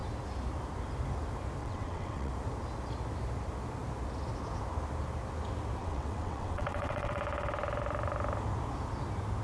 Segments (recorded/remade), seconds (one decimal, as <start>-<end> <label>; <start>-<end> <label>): 0.0-1.6 recorded; 1.6-2.3 remade; 2.3-5.8 recorded; 5.8-7.2 remade; 7.2-9.4 recorded